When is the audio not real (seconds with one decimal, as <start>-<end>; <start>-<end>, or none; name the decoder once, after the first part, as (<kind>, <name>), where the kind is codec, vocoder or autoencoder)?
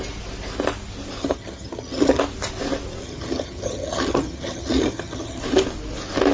1.2-2.2 (vocoder, HiFi-GAN); 3.0-5.4